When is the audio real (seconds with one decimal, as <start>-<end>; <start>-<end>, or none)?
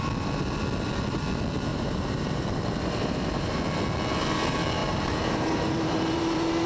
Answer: 0.0-1.7; 3.6-4.8